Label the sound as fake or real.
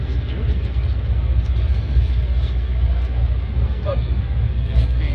fake